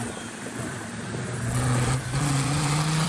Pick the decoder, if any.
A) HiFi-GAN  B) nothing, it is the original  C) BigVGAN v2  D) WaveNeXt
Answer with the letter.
C